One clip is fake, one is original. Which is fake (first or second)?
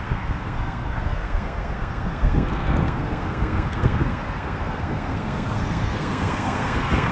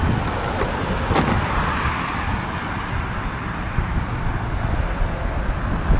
first